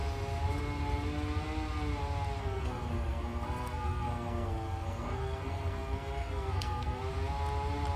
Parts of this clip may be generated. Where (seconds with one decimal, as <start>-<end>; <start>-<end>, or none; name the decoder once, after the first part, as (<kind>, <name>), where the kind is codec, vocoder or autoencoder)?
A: 2.4-7.0 (codec, SNAC)